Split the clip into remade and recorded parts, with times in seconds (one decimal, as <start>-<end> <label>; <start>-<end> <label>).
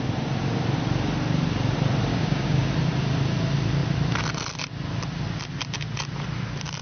0.0-2.1 recorded; 2.1-2.7 remade; 2.7-6.8 recorded